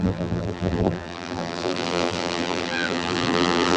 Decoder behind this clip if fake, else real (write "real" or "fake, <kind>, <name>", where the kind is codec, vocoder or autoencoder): fake, vocoder, BigVGAN v2